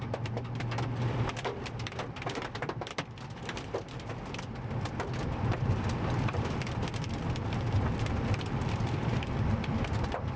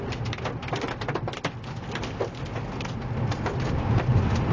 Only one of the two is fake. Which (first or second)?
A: first